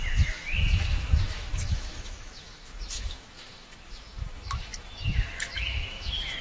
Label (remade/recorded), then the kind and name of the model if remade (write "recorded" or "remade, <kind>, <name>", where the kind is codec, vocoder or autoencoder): remade, autoencoder, DAC-VAE